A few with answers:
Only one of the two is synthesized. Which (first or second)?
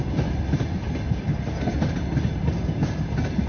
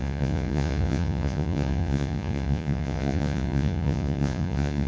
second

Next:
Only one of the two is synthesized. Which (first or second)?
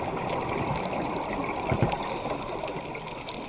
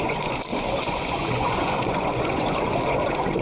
second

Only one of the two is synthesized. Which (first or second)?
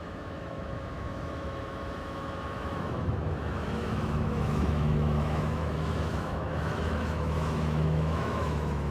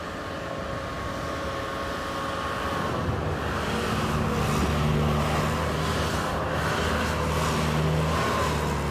first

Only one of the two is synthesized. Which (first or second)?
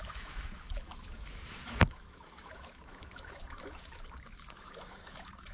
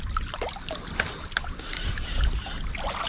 first